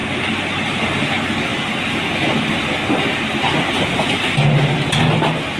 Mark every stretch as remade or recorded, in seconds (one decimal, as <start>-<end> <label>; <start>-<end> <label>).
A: 0.0-5.6 recorded